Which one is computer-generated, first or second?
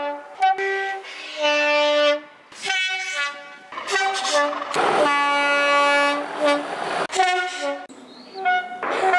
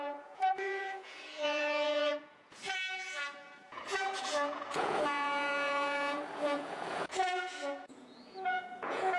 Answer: second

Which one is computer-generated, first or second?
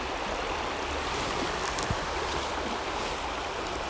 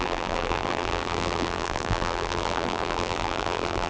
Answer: second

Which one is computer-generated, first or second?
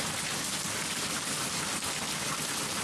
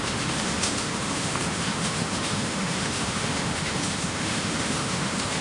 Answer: second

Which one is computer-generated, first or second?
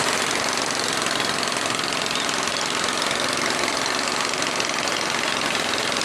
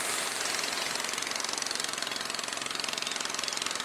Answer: first